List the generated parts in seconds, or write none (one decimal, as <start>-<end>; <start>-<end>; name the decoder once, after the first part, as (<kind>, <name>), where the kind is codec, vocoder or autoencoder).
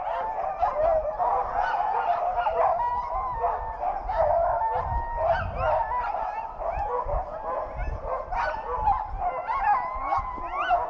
none